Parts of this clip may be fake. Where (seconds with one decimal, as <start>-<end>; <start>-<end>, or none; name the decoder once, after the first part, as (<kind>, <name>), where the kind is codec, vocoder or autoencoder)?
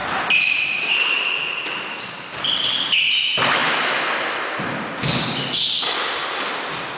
none